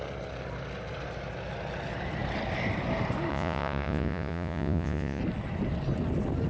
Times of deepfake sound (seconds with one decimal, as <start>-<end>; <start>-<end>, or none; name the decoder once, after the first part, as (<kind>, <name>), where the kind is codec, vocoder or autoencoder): 3.3-5.2 (vocoder, Vocos)